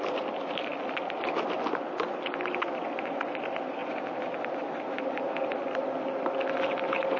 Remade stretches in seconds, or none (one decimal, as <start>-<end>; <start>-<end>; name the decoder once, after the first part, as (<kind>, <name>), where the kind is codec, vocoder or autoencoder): none

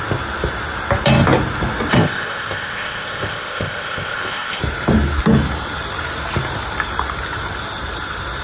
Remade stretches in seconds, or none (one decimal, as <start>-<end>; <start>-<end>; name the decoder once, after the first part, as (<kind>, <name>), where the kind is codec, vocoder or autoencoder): 1.9-4.6 (codec, ZipCodec)

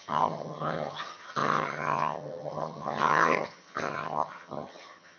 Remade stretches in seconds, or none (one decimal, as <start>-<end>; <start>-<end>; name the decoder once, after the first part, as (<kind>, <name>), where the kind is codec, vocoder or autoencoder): 0.0-5.2 (vocoder, HiFi-GAN)

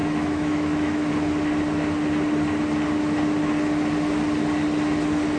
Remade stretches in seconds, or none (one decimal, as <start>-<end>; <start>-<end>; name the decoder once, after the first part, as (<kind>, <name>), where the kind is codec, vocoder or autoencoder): 0.0-1.1 (autoencoder, DAC-VAE)

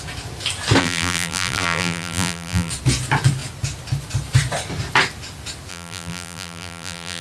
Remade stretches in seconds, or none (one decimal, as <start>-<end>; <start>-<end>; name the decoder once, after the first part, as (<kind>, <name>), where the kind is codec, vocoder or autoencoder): 0.8-2.7 (vocoder, BigVGAN v2); 5.7-7.2

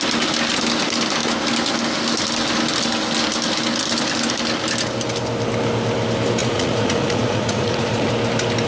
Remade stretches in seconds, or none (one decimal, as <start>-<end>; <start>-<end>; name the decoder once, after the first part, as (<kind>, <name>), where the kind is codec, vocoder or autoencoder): 6.4-8.1 (vocoder, Vocos)